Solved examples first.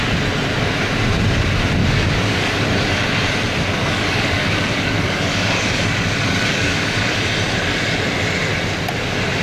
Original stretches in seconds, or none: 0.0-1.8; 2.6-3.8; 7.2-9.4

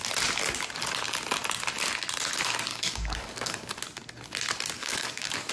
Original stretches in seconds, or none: 0.0-2.7; 3.8-4.8

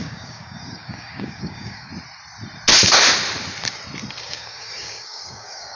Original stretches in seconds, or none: 1.9-4.2

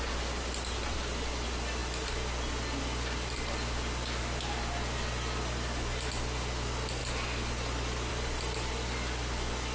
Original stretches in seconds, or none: 0.0-9.7

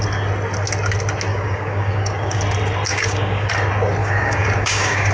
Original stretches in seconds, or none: 0.0-1.3; 2.4-2.9; 3.5-4.0

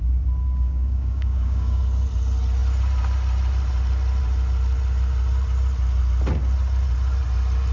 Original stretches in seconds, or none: 0.0-0.4; 1.8-7.7

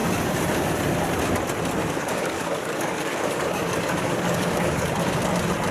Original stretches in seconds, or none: 0.0-1.8; 5.2-5.7

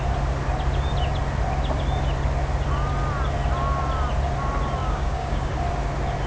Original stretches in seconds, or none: 0.0-4.8; 5.5-6.3